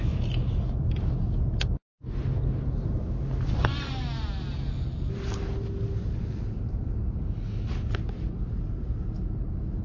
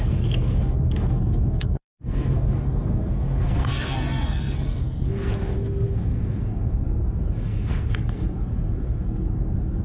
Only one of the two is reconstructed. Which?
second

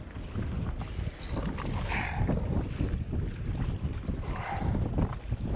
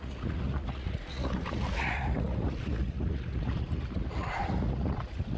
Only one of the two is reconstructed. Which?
second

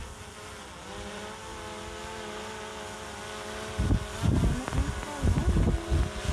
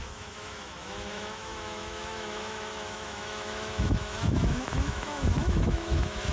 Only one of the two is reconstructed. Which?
second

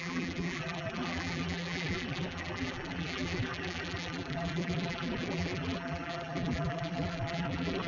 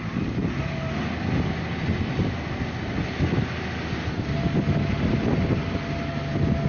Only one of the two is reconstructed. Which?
first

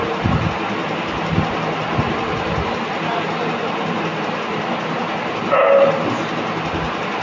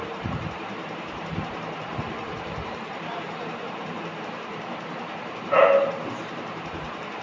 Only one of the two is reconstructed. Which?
second